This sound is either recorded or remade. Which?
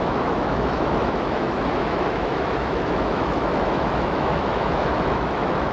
remade